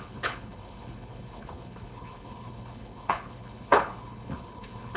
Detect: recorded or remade remade